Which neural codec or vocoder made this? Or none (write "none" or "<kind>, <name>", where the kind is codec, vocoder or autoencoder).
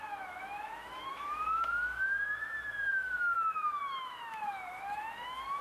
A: autoencoder, DAC-VAE